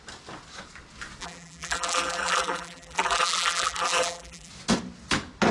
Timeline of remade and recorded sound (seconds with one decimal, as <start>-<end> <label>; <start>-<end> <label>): 0.0-1.2 recorded; 1.2-4.5 remade; 4.5-5.5 recorded